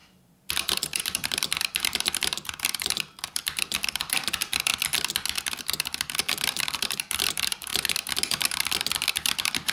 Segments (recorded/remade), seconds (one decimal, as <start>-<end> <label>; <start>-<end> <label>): 0.0-4.7 remade; 4.7-5.6 recorded; 5.6-7.7 remade; 7.7-9.1 recorded; 9.1-9.7 remade